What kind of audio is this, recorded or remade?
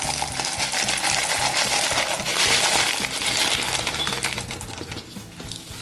recorded